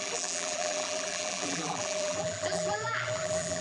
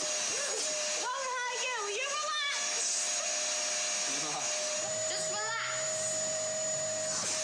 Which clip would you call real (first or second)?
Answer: second